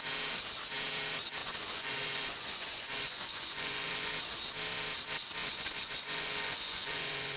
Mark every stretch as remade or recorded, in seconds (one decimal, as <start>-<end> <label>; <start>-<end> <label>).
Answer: 0.0-1.4 recorded; 1.4-4.1 remade; 4.1-5.4 recorded; 5.4-7.4 remade